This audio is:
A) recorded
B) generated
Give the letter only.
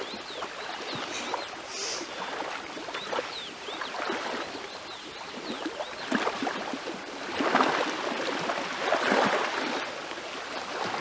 A